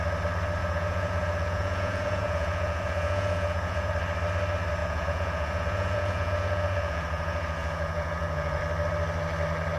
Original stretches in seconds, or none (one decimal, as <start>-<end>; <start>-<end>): 0.0-0.6; 3.9-4.8; 8.6-9.8